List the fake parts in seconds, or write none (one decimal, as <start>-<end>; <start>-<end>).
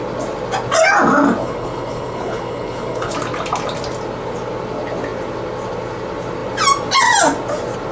1.4-3.1